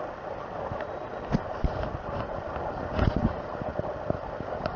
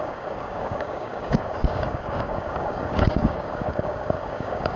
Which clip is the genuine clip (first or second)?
first